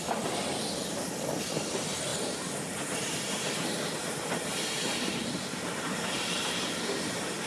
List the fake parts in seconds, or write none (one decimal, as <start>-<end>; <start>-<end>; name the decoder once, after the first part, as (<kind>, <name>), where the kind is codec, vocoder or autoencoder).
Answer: 2.1-6.6 (vocoder, BigVGAN v2)